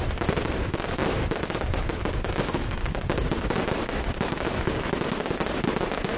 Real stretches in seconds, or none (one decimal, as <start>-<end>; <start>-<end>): 0.0-6.2